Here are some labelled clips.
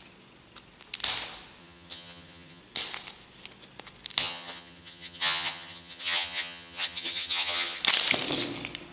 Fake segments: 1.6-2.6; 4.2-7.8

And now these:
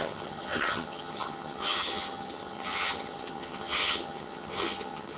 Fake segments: 0.0-5.2

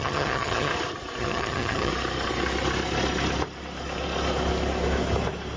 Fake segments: 0.0-0.7; 1.2-1.9

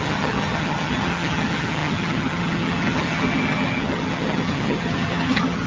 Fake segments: 0.0-5.7

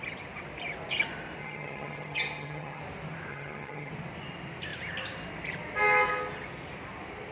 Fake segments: 1.4-2.8; 3.3-3.9

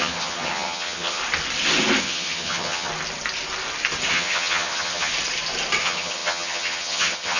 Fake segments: 0.0-1.2; 2.0-2.9; 4.1-5.1; 5.8-7.4

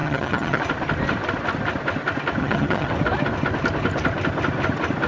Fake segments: 0.0-0.6; 2.4-2.9